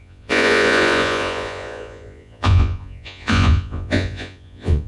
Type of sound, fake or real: fake